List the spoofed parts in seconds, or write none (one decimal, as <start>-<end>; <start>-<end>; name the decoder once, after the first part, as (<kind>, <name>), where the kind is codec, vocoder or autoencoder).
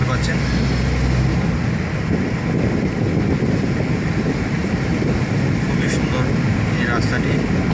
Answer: 4.6-6.1 (vocoder, BigVGAN v2)